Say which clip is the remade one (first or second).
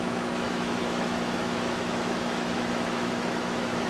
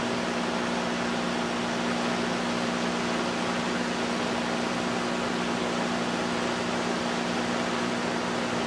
first